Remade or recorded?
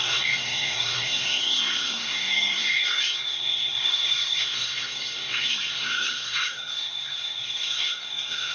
remade